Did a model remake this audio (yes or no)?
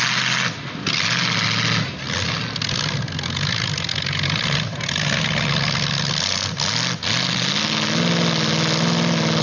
no